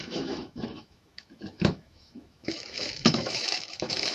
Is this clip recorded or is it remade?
remade